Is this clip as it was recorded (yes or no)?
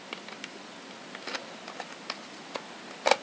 yes